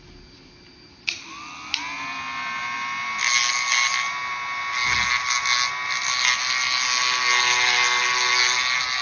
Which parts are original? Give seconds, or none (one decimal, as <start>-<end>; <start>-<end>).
0.0-9.0